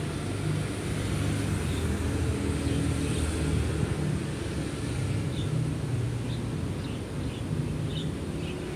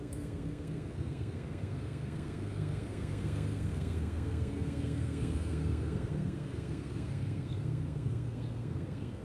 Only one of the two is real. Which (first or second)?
first